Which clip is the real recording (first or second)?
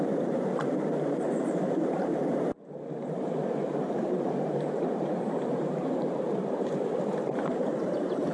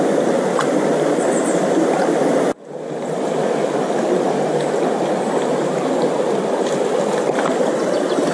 second